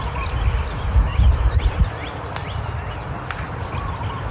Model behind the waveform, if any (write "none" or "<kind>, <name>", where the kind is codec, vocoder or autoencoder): vocoder, BigVGAN v2